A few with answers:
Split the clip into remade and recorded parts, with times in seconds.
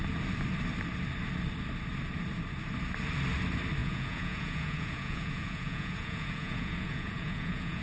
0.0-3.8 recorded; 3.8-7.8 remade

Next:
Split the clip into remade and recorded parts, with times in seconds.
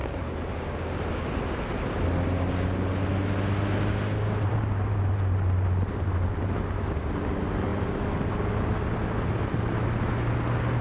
0.0-10.8 recorded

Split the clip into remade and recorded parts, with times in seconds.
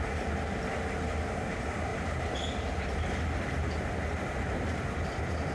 0.0-5.5 recorded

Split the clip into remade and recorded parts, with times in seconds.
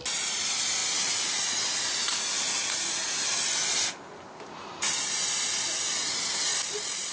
0.0-7.1 recorded